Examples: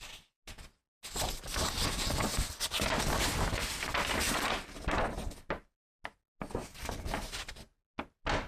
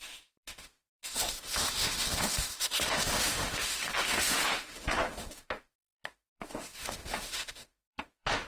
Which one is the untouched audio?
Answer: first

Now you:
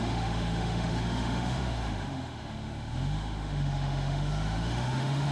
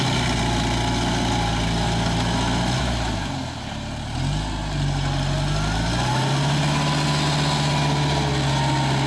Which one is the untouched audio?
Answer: second